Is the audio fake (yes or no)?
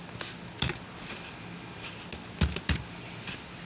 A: no